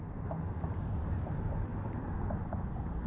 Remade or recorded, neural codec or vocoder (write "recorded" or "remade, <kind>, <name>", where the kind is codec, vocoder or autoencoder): recorded